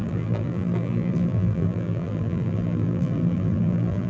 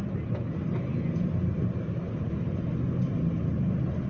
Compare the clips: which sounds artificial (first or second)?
first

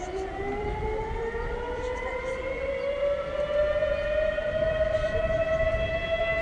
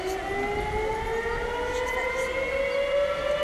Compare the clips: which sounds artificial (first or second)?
first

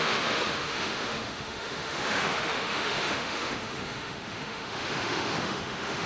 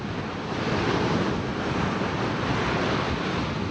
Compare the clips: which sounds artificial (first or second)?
first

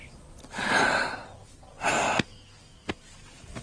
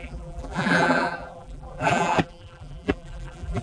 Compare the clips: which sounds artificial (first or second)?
second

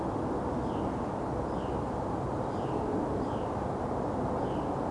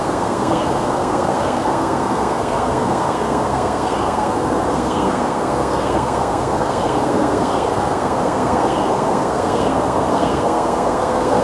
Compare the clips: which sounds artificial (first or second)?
second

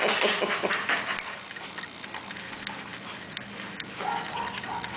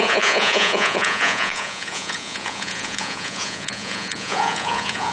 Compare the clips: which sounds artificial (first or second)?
second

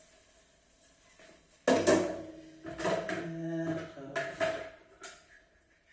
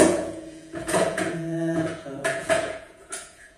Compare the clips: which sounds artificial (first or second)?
second